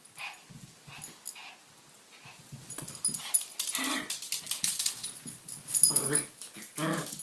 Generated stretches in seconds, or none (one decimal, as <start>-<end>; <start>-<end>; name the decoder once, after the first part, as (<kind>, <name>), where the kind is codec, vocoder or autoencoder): none